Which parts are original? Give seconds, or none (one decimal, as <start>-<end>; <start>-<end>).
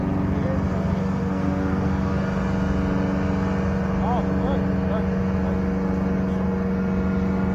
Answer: 0.0-0.7; 2.2-7.5